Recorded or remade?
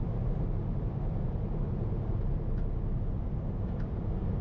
recorded